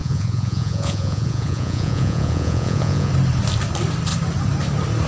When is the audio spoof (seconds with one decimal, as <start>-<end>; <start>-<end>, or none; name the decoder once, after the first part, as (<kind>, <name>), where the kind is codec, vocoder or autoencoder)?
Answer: 0.0-3.1 (vocoder, Vocos)